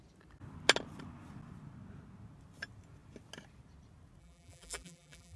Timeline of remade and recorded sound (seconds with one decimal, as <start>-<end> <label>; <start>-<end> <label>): 0.0-4.2 recorded; 4.2-5.4 remade